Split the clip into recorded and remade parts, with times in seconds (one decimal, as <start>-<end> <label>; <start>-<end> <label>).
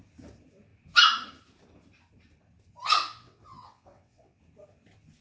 0.0-3.0 recorded; 3.0-4.4 remade; 4.4-5.2 recorded